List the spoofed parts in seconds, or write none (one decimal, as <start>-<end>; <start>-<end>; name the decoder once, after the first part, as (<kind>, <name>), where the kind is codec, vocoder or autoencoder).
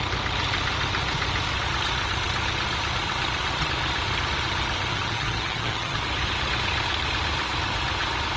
4.9-6.0 (vocoder, HiFi-GAN)